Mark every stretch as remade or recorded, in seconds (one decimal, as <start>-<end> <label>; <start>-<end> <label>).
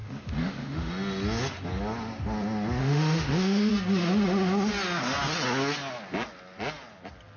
0.0-0.9 remade; 0.9-2.8 recorded; 2.8-3.7 remade; 3.7-7.4 recorded